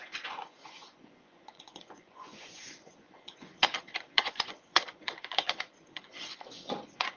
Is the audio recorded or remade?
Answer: remade